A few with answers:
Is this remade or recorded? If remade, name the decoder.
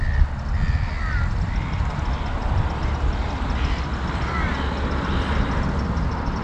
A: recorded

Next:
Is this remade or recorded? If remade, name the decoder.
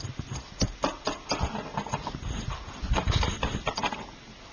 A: recorded